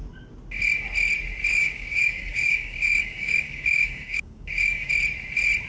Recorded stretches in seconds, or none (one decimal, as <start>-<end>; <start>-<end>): 0.0-1.5; 4.9-5.7